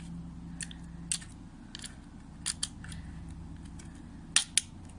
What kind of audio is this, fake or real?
real